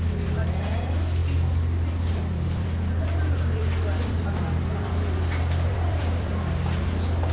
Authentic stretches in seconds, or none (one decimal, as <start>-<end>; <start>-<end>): none